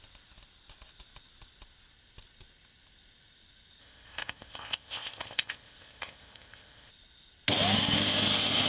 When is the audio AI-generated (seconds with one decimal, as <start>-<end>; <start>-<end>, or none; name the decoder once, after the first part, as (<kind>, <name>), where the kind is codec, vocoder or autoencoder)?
3.8-6.9 (codec, ZipCodec)

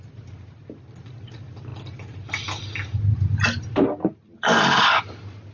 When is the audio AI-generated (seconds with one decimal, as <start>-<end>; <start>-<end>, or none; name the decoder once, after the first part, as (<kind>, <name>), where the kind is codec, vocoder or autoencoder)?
none